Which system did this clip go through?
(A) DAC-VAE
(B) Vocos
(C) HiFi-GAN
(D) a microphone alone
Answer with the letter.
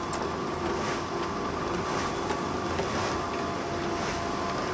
D